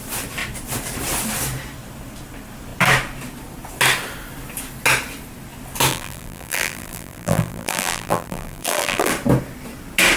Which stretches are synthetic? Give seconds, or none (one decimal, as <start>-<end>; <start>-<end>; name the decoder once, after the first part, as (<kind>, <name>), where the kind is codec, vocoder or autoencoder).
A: 5.9-9.1 (vocoder, BigVGAN v2)

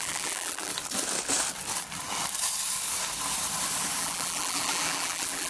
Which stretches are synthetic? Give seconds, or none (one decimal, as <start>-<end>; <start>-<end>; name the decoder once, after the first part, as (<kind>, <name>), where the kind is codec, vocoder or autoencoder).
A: 0.0-0.7 (vocoder, BigVGAN v2); 4.0-5.5